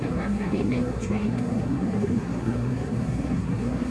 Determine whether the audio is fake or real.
fake